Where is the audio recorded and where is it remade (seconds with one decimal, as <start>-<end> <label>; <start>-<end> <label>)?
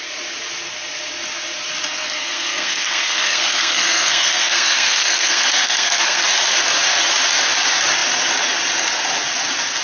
0.0-1.9 recorded; 1.9-6.2 remade; 6.2-9.8 recorded